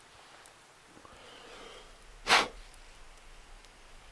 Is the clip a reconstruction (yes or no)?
no